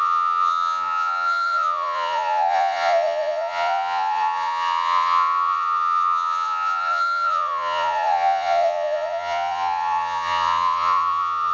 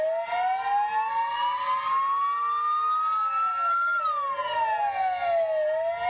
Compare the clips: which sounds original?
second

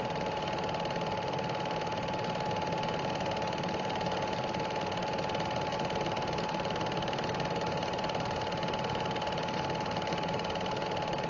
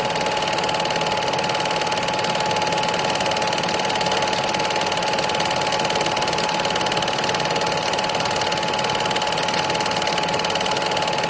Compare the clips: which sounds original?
second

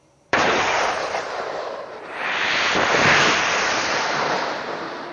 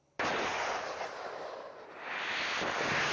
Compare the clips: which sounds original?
second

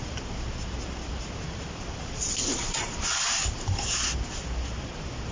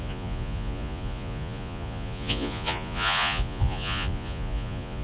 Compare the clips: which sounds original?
first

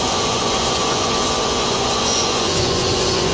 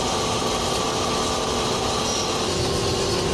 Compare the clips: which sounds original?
second